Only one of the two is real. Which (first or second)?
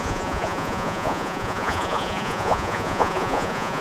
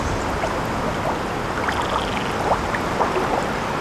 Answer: second